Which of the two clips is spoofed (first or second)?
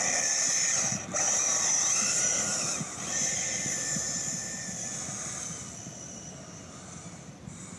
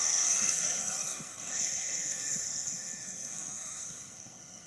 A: second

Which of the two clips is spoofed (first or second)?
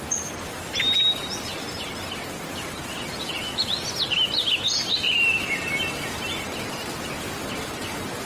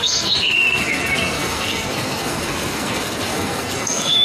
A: second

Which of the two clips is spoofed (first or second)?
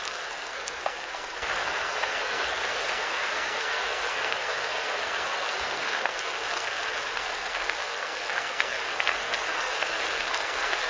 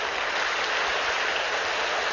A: first